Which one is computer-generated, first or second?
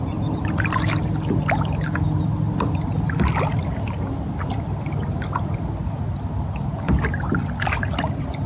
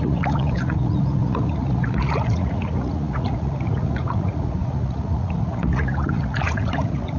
second